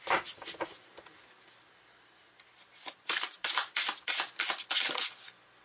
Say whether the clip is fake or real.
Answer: real